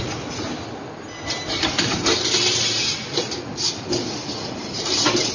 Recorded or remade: recorded